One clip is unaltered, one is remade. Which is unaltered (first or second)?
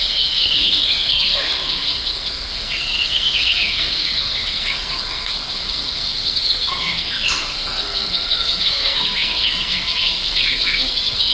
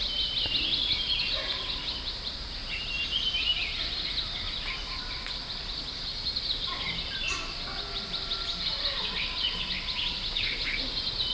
second